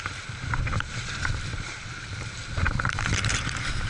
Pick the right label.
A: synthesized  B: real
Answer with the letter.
A